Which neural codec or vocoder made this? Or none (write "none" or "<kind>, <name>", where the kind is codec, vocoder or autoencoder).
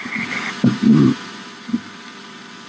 vocoder, BigVGAN v2